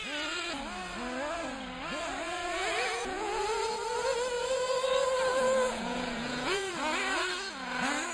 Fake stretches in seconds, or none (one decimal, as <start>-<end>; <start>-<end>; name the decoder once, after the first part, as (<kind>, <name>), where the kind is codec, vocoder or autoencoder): 2.4-3.4 (vocoder, Vocos); 5.3-6.7